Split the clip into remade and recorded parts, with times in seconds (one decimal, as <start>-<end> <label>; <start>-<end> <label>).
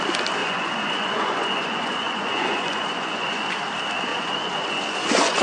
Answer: 0.0-0.4 recorded; 0.4-3.6 remade; 3.6-4.1 recorded; 4.1-5.4 remade